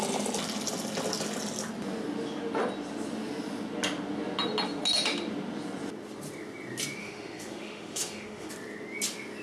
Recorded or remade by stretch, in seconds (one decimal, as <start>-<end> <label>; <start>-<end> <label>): 0.0-7.0 recorded; 7.0-8.5 remade; 8.5-9.4 recorded